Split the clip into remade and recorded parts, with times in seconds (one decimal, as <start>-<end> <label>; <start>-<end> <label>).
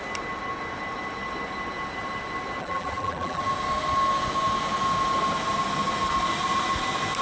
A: 0.0-2.6 recorded; 2.6-3.4 remade; 3.4-7.2 recorded